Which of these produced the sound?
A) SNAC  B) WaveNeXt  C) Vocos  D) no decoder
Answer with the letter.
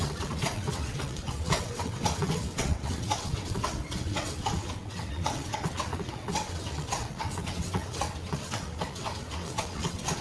B